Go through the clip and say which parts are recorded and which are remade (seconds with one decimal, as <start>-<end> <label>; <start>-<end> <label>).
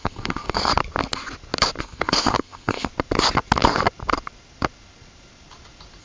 0.0-0.7 remade; 0.7-1.8 recorded; 1.8-2.9 remade; 2.9-6.0 recorded